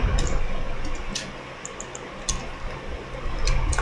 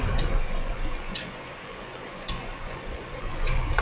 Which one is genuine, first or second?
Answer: first